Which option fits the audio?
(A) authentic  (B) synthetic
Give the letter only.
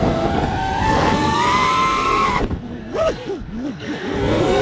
B